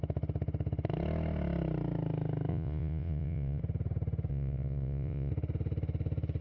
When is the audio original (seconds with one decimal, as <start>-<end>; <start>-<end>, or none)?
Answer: 0.0-2.5; 3.6-4.3; 5.3-6.4